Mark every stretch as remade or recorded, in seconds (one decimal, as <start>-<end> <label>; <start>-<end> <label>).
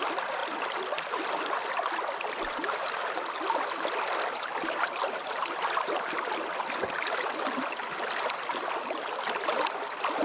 0.0-10.2 recorded